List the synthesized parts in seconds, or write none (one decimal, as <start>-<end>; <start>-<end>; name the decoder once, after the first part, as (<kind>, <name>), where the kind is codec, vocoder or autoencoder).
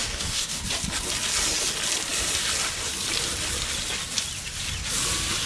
0.0-0.6 (codec, DAC)